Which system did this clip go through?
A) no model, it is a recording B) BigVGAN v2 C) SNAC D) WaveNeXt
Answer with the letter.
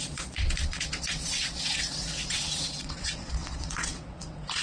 D